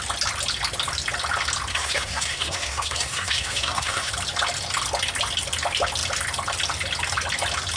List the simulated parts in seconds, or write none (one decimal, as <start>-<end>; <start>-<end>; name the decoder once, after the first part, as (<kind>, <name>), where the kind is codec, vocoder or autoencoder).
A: 1.7-4.1 (codec, SNAC)